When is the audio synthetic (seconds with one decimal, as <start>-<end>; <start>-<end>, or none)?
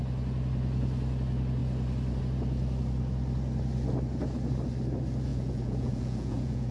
5.3-6.7